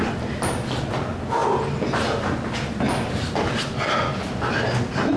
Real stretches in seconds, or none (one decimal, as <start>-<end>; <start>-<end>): 0.0-5.2